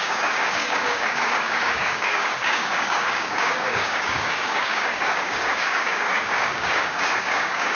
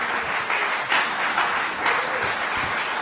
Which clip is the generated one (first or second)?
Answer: first